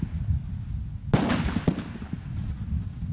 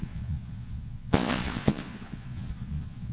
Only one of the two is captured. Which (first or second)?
first